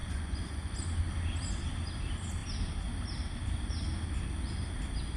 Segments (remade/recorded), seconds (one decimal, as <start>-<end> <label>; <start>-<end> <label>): 0.0-0.8 remade; 0.8-5.2 recorded